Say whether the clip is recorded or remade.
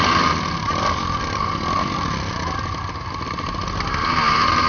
recorded